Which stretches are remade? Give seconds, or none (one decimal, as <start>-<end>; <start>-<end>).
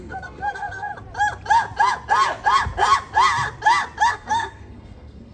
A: 0.0-0.9; 4.1-5.3